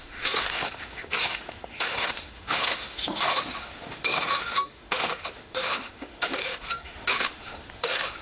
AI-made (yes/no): yes